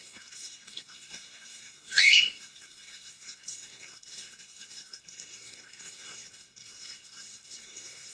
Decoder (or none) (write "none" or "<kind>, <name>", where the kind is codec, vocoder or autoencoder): codec, SNAC